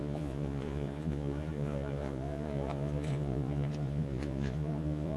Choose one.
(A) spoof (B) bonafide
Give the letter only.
A